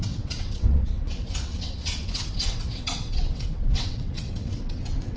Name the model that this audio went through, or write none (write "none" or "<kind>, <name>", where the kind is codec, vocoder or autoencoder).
vocoder, WaveNeXt